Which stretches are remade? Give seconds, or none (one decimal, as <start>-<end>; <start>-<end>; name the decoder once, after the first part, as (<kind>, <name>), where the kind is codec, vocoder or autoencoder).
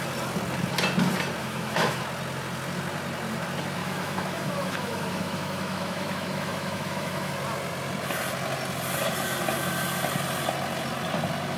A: 1.4-2.0 (autoencoder, DAC-VAE); 3.8-7.3